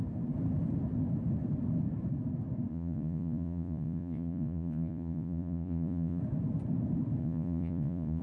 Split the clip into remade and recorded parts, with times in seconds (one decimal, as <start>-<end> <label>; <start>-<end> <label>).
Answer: 0.0-2.7 recorded; 2.7-6.2 remade; 6.2-7.2 recorded; 7.2-8.2 remade